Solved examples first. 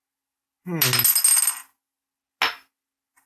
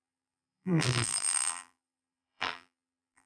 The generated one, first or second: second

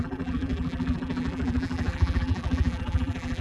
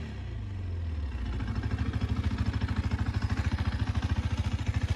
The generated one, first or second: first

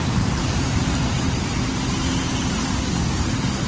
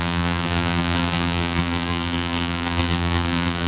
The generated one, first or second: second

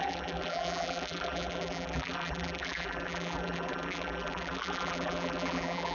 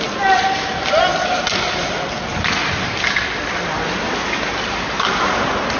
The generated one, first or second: first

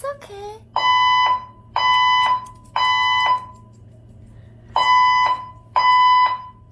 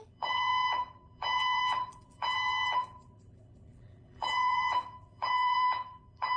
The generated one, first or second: second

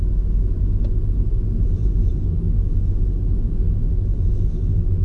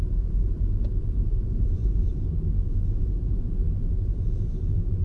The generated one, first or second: second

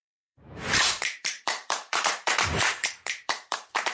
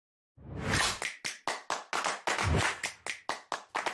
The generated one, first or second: first